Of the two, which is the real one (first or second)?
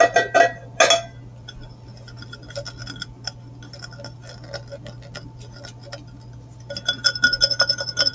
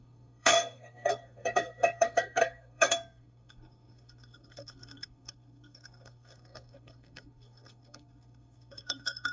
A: first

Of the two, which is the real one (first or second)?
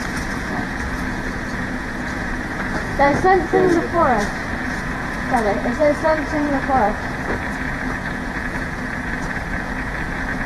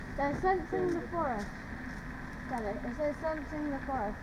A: second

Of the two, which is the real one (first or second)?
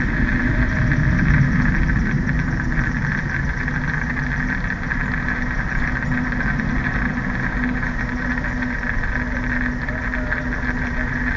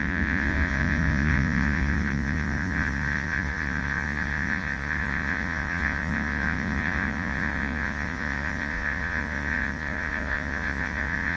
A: first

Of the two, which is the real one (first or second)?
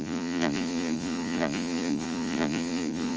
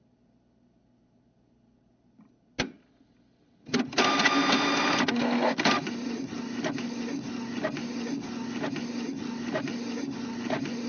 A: second